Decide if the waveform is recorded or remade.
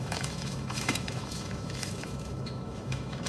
remade